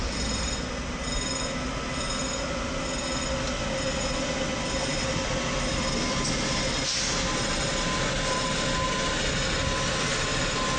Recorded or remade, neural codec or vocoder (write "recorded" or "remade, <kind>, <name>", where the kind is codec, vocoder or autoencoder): recorded